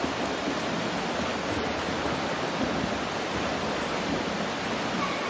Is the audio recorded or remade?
recorded